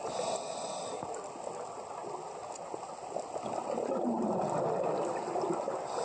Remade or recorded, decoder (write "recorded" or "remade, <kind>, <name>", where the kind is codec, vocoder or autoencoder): recorded